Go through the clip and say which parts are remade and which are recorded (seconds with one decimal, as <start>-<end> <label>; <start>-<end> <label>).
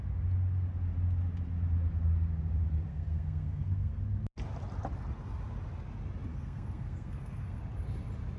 0.0-2.9 recorded; 2.9-4.0 remade; 4.0-6.3 recorded; 6.3-7.6 remade; 7.6-8.4 recorded